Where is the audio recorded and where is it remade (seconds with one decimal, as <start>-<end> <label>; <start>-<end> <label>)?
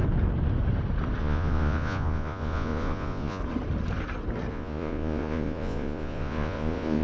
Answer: 0.0-1.2 recorded; 1.2-3.4 remade; 3.4-4.5 recorded; 4.5-7.0 remade